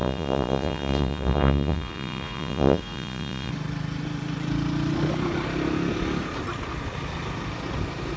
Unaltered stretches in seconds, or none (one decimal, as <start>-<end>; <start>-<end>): 3.5-8.2